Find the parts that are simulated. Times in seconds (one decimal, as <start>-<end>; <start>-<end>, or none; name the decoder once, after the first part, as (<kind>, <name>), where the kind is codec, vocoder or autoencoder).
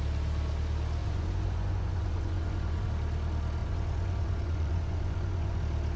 1.0-2.9 (vocoder, Vocos); 3.6-5.6